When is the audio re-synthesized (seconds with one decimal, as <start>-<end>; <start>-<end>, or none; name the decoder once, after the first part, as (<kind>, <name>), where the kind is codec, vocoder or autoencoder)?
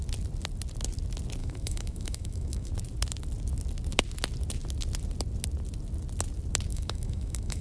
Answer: 1.4-2.7 (autoencoder, DAC-VAE); 6.7-7.6